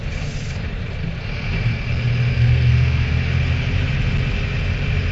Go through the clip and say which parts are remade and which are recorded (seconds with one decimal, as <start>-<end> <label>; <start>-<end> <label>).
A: 0.0-2.3 recorded; 2.3-3.2 remade; 3.2-5.1 recorded